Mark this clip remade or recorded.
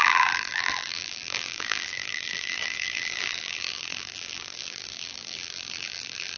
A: remade